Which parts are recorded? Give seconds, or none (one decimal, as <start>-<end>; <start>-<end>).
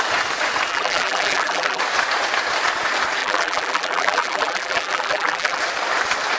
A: 0.0-0.7; 1.8-3.2; 5.6-6.4